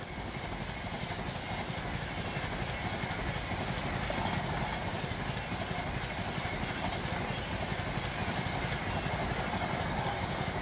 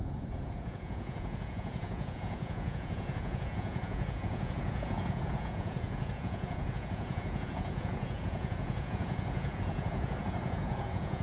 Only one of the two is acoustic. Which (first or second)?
first